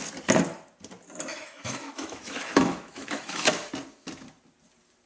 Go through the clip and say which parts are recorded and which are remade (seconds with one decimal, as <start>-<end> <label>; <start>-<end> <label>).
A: 0.0-1.3 recorded; 1.3-3.7 remade; 3.7-5.1 recorded